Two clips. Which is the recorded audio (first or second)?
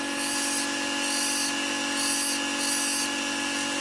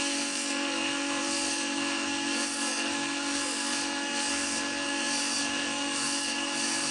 first